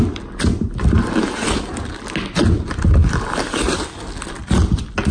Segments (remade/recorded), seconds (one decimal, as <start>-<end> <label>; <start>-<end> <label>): 0.0-3.0 recorded; 3.0-4.0 remade; 4.0-5.1 recorded